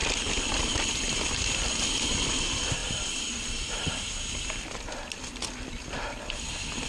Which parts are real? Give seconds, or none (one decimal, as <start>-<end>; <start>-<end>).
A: 0.0-6.9

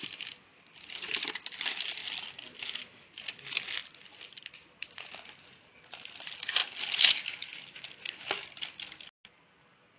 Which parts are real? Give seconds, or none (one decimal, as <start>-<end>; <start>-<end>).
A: 0.0-0.5; 1.2-2.0; 2.6-10.0

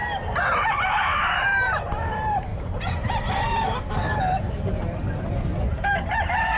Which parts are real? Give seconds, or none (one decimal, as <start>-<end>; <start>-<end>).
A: 0.0-1.5; 2.1-2.5; 4.2-6.6